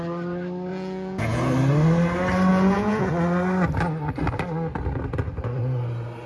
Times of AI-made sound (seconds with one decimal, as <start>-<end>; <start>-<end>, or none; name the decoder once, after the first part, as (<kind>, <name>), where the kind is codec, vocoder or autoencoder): 0.7-1.5 (vocoder, Vocos); 2.5-3.1